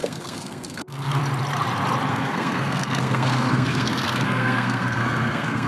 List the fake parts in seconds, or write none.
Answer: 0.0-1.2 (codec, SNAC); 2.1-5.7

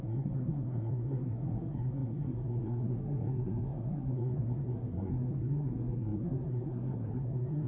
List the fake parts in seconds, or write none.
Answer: 0.0-7.7 (codec, SNAC)

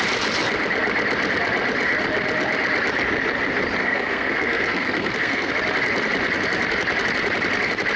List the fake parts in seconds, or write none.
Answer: 3.8-5.5 (codec, SNAC)

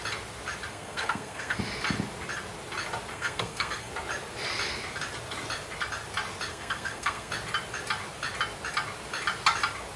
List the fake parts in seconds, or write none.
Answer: 0.7-1.6 (codec, SNAC); 3.1-3.9; 6.5-7.3

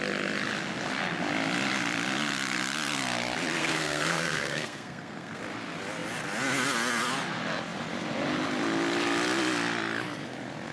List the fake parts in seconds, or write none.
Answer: 3.6-5.4 (codec, SNAC)

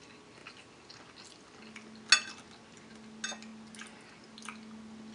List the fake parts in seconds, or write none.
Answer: none

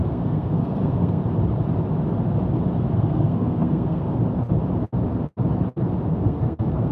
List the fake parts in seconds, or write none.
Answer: 0.0-1.2 (codec, SNAC); 2.9-4.0; 6.1-6.9

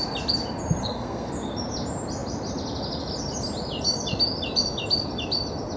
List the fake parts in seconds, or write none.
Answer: 0.8-1.3 (codec, SNAC)